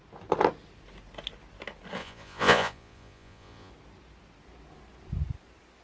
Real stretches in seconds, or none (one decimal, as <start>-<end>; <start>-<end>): 0.0-2.0; 3.7-5.8